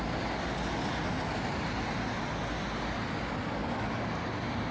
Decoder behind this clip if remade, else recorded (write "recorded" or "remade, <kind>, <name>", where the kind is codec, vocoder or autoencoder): recorded